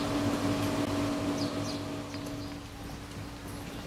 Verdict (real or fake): real